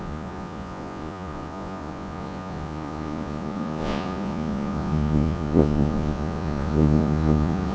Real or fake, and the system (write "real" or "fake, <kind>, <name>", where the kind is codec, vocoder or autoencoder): fake, vocoder, Vocos